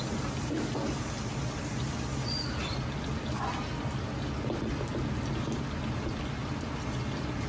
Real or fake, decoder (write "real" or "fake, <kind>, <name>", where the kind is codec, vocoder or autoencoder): real